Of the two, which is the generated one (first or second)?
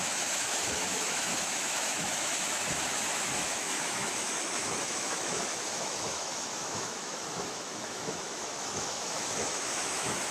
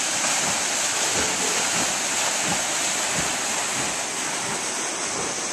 first